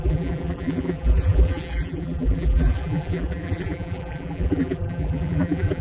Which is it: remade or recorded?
remade